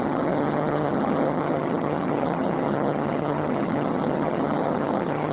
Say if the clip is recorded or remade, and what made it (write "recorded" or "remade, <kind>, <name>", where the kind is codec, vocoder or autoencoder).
remade, vocoder, HiFi-GAN